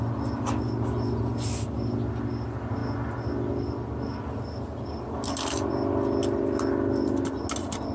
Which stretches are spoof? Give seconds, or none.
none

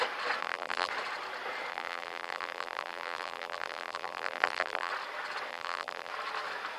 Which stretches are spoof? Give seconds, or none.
0.4-0.9 (vocoder, BigVGAN v2); 1.7-4.9; 5.5-6.1

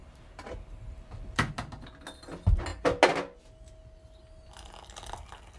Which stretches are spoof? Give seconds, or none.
0.0-1.5 (vocoder, BigVGAN v2)

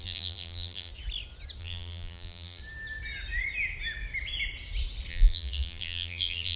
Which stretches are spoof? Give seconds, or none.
0.0-0.9 (vocoder, BigVGAN v2); 1.6-2.6; 5.1-6.6

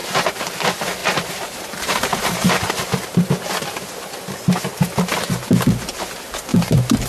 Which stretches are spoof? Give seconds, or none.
0.0-0.6 (vocoder, BigVGAN v2); 1.0-3.3; 6.5-7.1

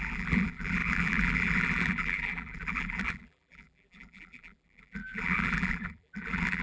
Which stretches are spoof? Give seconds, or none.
0.0-6.6 (vocoder, BigVGAN v2)

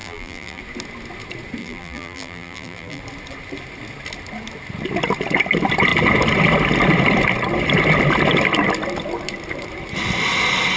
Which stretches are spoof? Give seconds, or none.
0.0-0.6 (vocoder, BigVGAN v2); 1.6-3.0